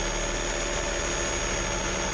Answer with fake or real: real